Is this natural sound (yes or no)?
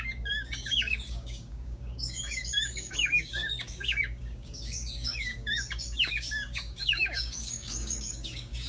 no